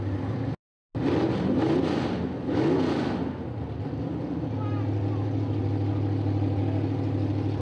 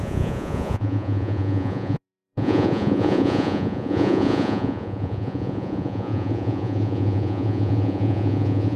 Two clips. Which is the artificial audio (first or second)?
second